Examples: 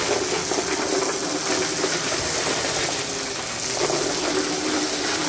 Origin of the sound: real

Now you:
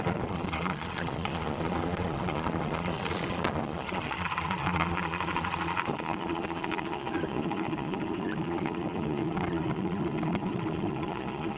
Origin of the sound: fake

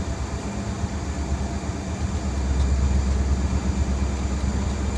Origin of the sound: real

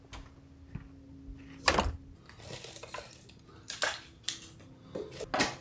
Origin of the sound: real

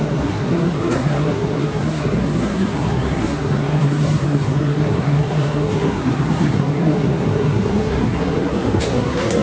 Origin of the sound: fake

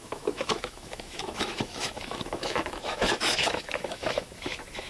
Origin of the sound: fake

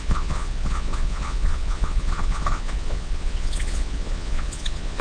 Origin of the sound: fake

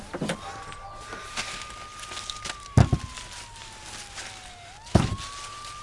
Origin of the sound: real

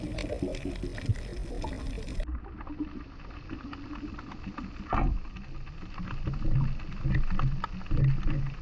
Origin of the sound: real